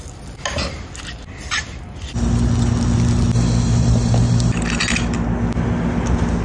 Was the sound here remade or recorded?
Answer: recorded